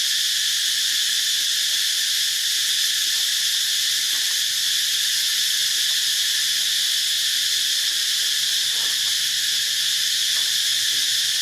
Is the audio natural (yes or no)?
yes